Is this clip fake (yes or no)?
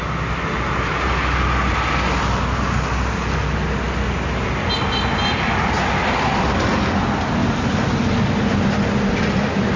no